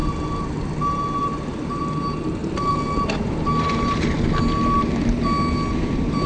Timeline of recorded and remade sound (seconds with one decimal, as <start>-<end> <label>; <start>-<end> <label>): 0.0-6.3 recorded